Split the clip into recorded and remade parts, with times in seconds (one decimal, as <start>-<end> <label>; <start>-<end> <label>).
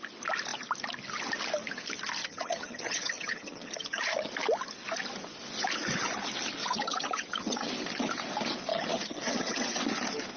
0.0-2.2 recorded; 2.2-4.3 remade; 4.3-6.6 recorded; 6.6-7.7 remade; 7.7-8.7 recorded; 8.7-9.8 remade; 9.8-10.4 recorded